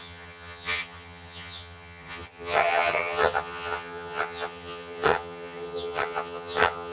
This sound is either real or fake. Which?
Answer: fake